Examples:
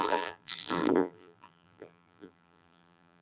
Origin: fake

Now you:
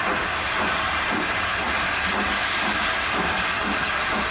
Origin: real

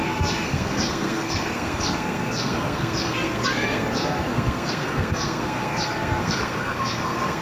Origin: fake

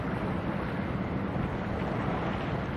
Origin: real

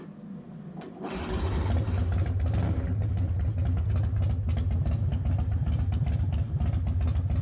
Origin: real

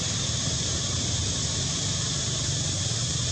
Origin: fake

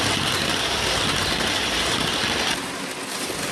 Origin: real